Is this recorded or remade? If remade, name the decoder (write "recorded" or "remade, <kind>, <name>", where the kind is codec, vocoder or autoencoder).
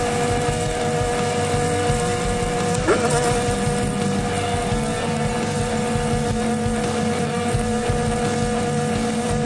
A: recorded